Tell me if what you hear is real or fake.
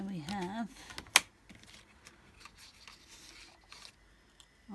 real